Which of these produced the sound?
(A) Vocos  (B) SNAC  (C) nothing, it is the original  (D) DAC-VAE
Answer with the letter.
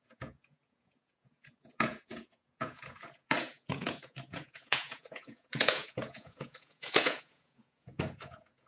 A